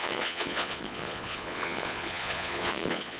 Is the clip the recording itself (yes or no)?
no